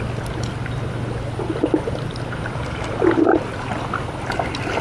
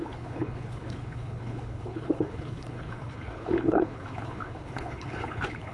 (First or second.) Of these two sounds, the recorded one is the first